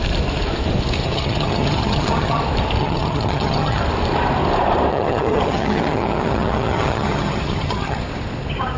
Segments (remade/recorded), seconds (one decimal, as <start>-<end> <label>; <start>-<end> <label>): 0.0-1.0 recorded; 1.0-2.4 remade; 2.4-2.8 recorded; 2.8-3.8 remade; 3.8-4.9 recorded; 4.9-8.0 remade; 8.0-8.8 recorded